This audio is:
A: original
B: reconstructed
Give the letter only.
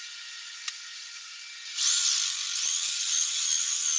A